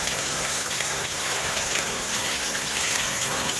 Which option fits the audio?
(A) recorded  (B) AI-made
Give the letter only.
B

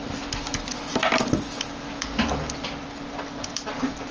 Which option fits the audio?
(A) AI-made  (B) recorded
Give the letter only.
B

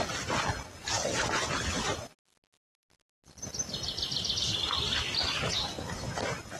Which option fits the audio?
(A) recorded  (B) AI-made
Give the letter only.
A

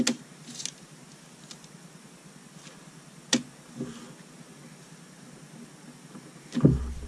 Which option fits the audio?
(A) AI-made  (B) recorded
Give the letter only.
B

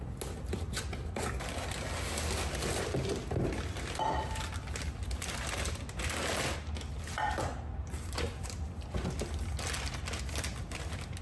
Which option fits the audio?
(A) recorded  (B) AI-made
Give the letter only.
A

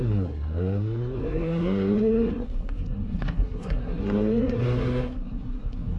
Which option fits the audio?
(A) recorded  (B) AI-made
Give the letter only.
B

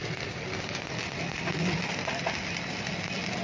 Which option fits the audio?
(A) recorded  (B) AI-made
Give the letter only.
A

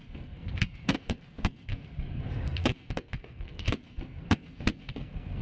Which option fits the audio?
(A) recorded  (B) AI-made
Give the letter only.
B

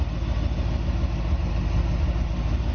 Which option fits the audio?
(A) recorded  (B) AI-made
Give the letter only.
A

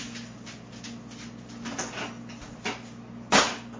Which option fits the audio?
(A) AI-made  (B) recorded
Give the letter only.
B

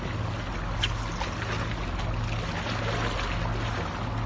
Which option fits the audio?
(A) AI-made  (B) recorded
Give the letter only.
B